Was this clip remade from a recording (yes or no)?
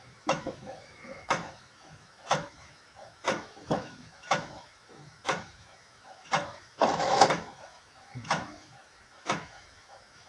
yes